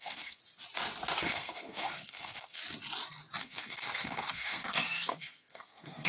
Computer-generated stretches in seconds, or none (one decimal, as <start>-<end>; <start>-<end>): 0.0-0.4; 1.2-2.6; 3.4-6.1